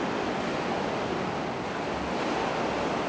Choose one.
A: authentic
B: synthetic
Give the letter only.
A